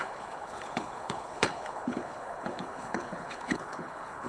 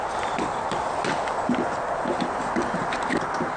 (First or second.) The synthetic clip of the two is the first